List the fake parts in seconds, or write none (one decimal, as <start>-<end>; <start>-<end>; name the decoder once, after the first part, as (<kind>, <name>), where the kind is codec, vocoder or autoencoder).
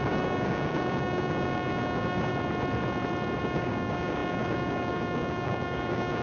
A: 0.0-2.3 (codec, DAC); 3.4-6.2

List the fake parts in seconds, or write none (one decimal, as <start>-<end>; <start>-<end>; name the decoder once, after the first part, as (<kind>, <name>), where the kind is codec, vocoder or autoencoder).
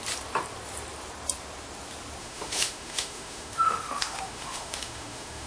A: 2.2-5.5 (autoencoder, DAC-VAE)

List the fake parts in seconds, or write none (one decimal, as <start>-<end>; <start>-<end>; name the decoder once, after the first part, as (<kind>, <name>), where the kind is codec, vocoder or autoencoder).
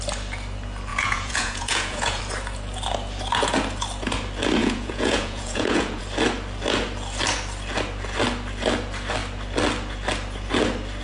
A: 0.9-2.2 (vocoder, Vocos); 4.6-6.0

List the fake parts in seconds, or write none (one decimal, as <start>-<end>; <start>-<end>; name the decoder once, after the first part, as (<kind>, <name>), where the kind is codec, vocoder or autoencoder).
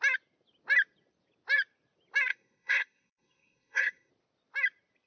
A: 2.3-4.1 (codec, SNAC)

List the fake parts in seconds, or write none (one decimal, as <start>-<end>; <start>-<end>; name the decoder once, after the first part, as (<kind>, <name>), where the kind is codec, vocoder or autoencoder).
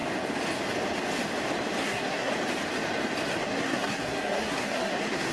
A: 1.8-2.3 (codec, SNAC); 3.4-5.3